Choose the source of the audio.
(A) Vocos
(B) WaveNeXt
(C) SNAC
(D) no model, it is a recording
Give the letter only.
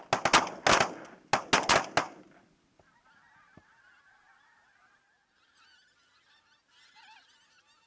D